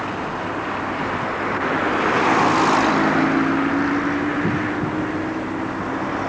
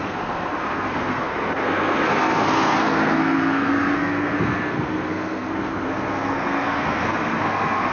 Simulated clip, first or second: second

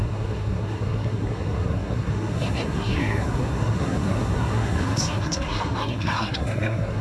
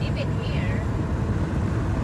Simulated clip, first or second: first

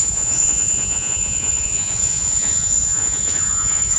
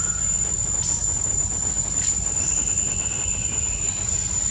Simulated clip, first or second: first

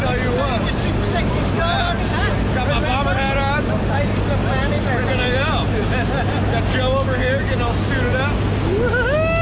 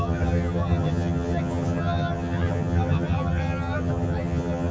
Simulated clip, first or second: second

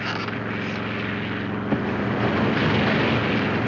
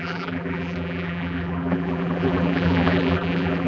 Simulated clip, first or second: second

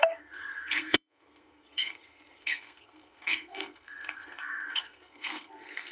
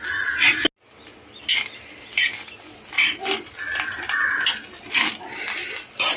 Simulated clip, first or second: first